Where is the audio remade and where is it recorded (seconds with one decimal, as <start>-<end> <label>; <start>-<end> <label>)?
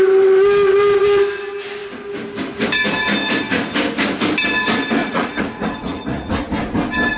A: 0.0-5.0 recorded; 5.0-6.3 remade; 6.3-7.2 recorded